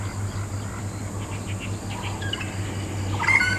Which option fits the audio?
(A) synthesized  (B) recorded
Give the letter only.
B